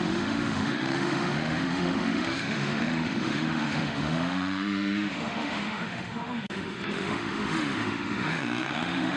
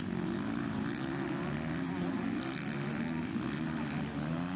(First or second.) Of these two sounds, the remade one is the first